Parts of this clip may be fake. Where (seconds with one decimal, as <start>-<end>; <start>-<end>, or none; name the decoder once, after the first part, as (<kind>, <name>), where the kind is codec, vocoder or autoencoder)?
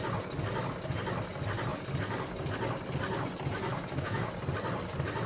3.7-4.3 (autoencoder, DAC-VAE)